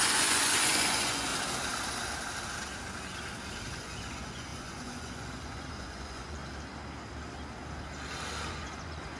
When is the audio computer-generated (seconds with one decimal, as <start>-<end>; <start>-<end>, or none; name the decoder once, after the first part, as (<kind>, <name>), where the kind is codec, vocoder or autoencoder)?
0.0-1.3 (vocoder, Vocos); 3.7-6.4; 8.5-9.2